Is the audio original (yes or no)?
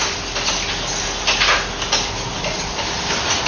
yes